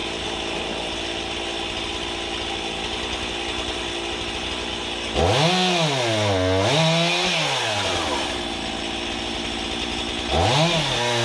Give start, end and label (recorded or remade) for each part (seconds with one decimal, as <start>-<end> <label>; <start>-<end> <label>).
0.0-11.2 recorded